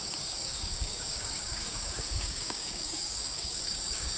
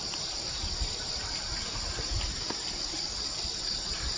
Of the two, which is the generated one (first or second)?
first